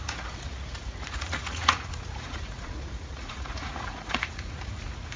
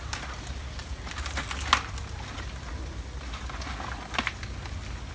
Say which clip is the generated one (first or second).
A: first